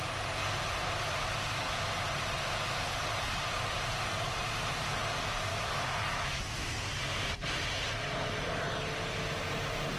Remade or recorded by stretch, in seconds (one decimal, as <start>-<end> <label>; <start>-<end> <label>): 0.0-5.5 recorded; 5.5-6.9 remade; 6.9-10.0 recorded